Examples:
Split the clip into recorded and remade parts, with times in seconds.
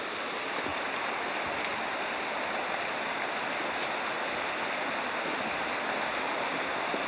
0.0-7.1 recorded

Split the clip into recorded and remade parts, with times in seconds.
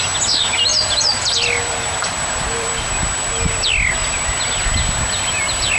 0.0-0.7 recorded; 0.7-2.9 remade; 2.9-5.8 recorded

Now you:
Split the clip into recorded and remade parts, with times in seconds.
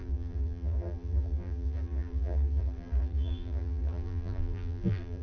0.0-5.2 remade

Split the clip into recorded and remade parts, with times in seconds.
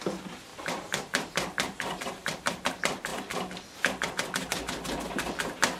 0.0-0.5 recorded; 0.5-2.7 remade; 2.7-5.8 recorded